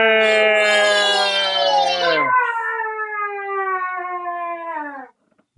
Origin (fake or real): real